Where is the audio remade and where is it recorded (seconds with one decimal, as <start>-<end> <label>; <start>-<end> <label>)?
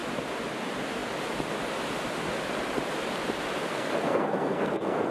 0.0-3.7 recorded; 3.7-5.1 remade